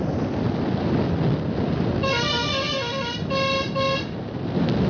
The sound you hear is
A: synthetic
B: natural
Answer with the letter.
B